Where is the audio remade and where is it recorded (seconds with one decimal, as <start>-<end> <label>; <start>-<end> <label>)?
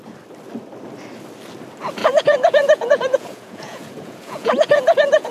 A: 0.0-2.0 recorded; 2.0-5.3 remade